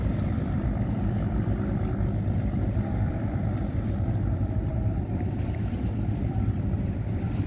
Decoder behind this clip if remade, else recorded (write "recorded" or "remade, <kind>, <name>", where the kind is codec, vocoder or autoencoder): remade, vocoder, BigVGAN v2